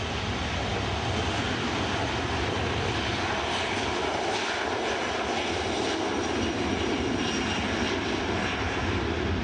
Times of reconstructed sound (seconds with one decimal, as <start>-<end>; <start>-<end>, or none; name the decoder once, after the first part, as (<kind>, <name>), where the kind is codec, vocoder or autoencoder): none